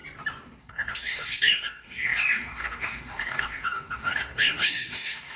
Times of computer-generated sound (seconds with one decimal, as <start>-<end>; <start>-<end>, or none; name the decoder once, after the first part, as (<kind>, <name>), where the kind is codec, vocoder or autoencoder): 0.6-5.4 (codec, DAC)